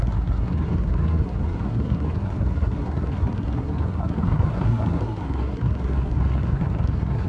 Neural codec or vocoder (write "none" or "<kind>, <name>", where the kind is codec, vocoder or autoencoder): codec, SNAC